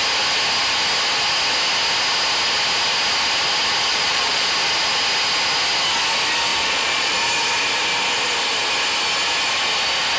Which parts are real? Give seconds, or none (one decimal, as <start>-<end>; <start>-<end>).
0.0-3.9; 4.5-6.5; 7.1-10.2